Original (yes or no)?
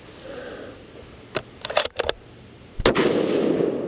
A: yes